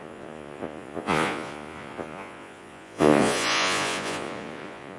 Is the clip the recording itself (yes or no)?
no